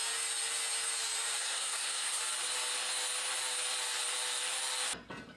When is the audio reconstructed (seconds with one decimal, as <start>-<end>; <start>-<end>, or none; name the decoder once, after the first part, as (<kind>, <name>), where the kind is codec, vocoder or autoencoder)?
1.4-2.2 (codec, SNAC)